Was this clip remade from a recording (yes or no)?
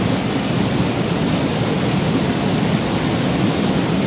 no